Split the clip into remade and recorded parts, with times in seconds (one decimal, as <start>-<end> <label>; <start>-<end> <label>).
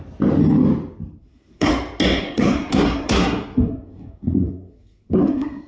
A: 0.0-1.2 recorded; 1.2-1.7 remade; 1.7-2.2 recorded; 2.2-5.7 remade